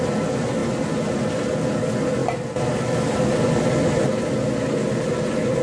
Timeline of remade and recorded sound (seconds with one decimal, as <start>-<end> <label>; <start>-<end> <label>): 0.0-5.6 recorded